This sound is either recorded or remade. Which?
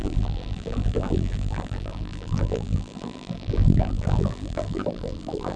remade